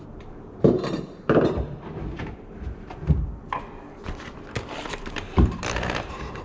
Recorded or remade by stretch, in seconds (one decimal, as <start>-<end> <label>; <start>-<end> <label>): 0.0-3.3 remade; 3.3-5.0 recorded; 5.0-6.4 remade